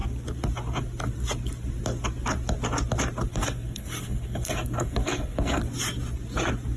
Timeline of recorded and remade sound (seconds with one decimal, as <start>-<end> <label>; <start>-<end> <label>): 0.0-3.3 recorded; 3.3-5.6 remade; 5.6-6.8 recorded